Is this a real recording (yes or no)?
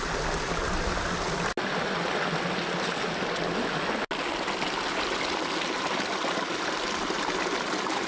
yes